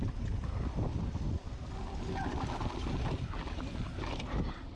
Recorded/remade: recorded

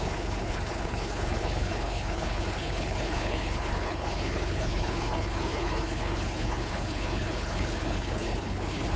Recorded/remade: remade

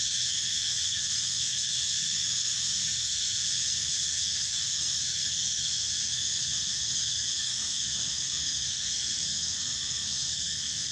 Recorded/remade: remade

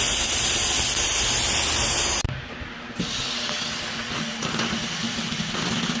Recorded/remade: recorded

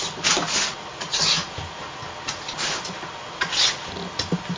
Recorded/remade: recorded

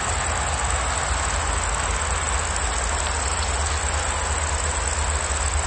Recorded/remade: recorded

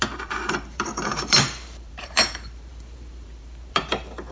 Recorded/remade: remade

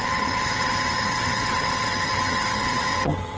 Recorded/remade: remade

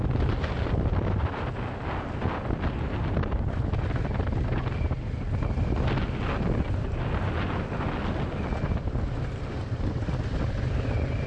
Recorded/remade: recorded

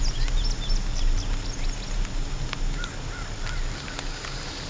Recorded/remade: recorded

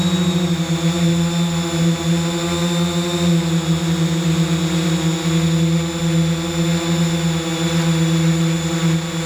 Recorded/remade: recorded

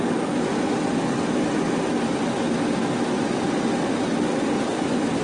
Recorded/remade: recorded